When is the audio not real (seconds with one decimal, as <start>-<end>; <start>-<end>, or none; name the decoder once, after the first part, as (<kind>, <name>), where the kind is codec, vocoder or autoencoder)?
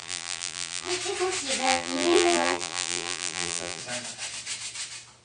0.0-0.9 (vocoder, BigVGAN v2); 1.6-3.8